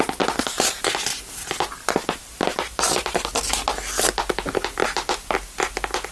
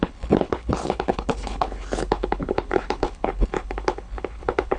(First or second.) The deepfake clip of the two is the second